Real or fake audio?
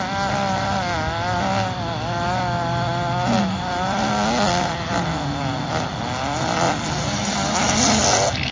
real